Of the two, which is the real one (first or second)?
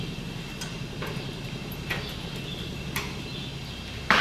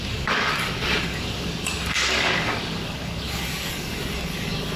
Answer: first